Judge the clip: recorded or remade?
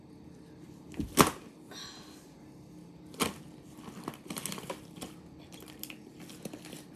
recorded